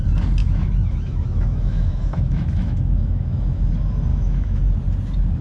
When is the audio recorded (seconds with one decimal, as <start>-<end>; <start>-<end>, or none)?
0.0-0.4; 3.6-4.1; 4.6-5.4